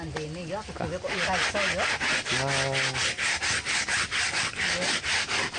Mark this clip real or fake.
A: real